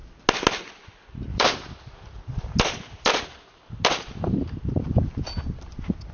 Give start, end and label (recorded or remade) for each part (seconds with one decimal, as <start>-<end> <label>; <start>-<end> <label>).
0.0-0.6 recorded; 0.6-3.1 remade; 3.1-6.1 recorded